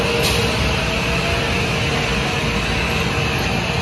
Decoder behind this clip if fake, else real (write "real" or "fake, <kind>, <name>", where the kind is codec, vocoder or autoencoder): real